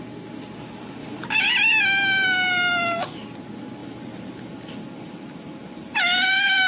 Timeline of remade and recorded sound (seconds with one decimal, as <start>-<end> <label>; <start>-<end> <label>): 0.0-1.0 recorded; 1.0-1.7 remade; 1.7-3.8 recorded; 3.8-6.7 remade